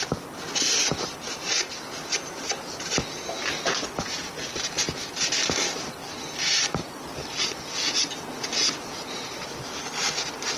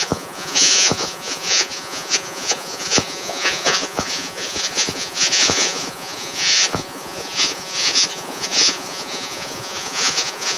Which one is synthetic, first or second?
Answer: second